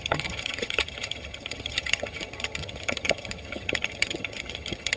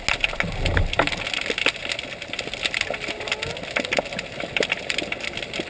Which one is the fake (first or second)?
first